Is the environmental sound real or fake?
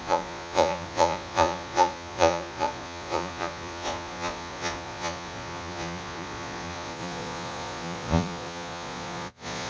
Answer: fake